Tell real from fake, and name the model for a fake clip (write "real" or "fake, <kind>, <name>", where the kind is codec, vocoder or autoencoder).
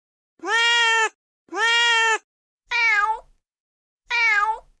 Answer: real